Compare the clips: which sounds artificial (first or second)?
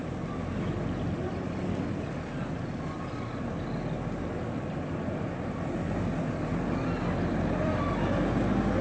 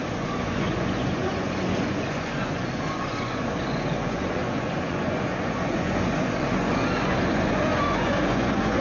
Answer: second